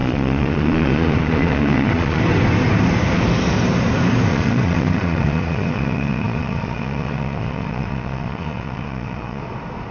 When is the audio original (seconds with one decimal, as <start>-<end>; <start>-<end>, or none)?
2.2-4.3; 9.4-9.9